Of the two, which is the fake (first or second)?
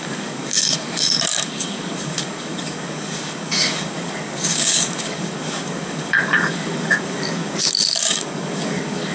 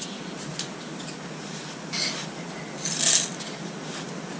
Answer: first